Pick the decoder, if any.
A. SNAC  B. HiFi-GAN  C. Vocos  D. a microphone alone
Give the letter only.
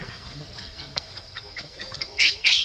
A